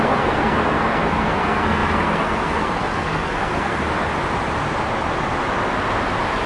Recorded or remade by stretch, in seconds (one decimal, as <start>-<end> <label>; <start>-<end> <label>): 0.0-3.8 remade; 3.8-6.5 recorded